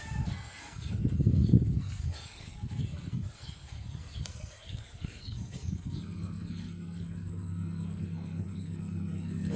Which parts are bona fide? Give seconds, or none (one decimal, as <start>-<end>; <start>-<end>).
none